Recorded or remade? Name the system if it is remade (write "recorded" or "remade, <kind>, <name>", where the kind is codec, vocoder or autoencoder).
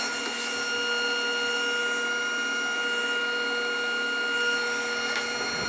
recorded